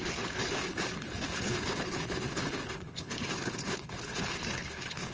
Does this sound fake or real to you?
fake